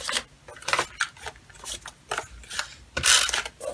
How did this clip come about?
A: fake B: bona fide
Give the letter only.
B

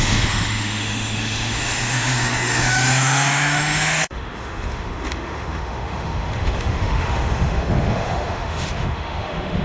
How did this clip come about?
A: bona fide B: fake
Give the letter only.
B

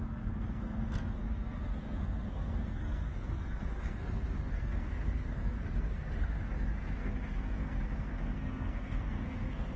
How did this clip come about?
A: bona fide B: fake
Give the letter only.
B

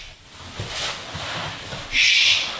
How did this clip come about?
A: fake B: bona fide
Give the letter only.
B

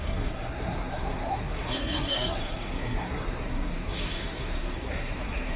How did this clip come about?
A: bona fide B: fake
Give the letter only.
B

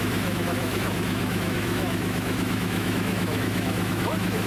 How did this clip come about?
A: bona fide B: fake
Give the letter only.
B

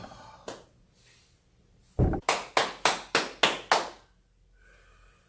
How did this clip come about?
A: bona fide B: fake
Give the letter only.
A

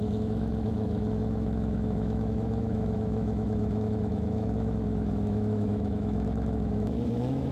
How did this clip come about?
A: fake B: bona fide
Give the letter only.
A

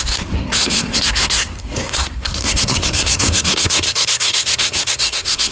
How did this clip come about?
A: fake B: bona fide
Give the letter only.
A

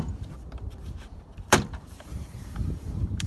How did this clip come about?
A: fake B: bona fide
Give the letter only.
A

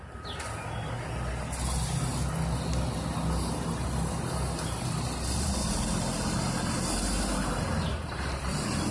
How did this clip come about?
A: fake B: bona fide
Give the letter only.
B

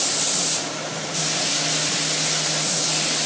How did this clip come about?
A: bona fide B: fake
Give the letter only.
A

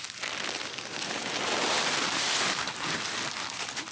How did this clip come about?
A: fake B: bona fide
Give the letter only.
B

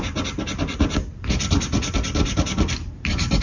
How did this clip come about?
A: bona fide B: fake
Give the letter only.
A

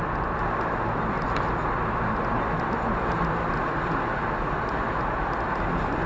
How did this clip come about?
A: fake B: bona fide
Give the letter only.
B